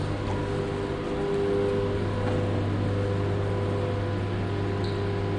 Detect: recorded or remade recorded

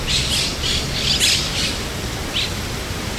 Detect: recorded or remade recorded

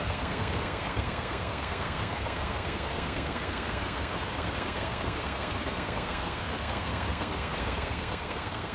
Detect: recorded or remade remade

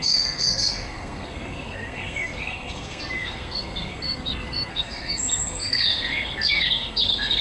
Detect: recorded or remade remade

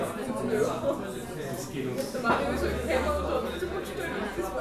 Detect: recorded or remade recorded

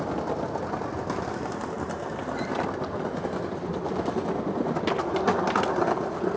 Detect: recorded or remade recorded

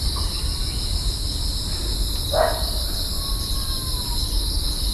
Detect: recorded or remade recorded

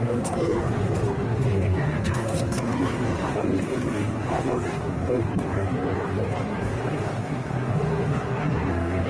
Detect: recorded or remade remade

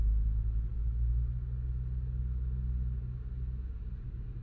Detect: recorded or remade recorded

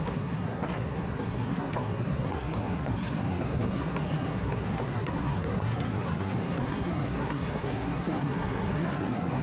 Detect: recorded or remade remade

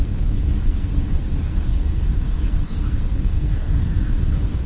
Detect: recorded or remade remade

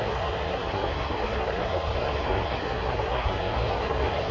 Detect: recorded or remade remade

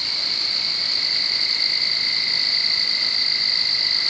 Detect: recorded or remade recorded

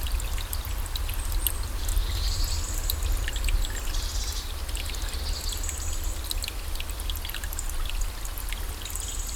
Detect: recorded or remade recorded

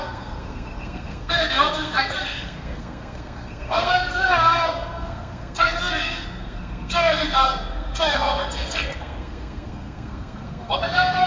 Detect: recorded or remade remade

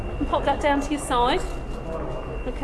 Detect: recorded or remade recorded